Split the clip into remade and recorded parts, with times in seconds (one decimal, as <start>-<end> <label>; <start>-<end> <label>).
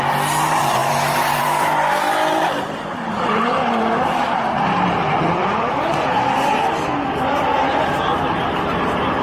0.0-0.8 recorded; 0.8-5.8 remade; 5.8-9.2 recorded